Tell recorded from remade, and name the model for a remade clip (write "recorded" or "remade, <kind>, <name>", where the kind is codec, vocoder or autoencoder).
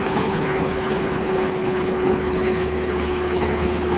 remade, codec, HILCodec